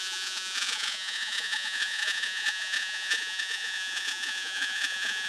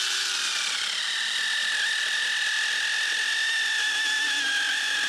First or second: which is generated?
first